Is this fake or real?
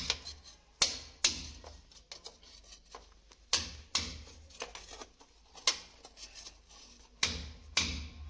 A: real